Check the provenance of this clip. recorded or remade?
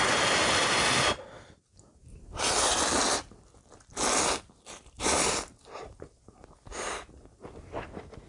recorded